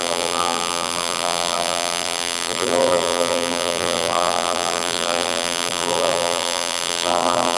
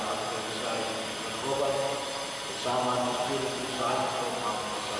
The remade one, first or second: first